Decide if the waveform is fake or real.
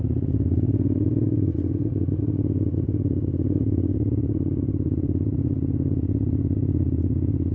fake